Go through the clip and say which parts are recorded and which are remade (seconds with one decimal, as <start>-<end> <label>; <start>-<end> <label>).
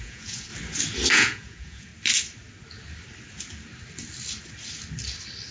0.0-0.5 remade; 0.5-1.1 recorded; 1.1-1.9 remade; 1.9-5.5 recorded